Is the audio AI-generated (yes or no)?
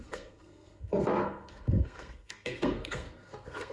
yes